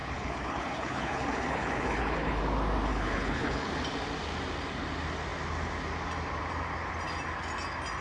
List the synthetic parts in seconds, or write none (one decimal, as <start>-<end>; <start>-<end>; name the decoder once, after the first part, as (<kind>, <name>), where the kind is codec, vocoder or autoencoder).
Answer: 0.0-2.4 (codec, HILCodec); 2.9-3.7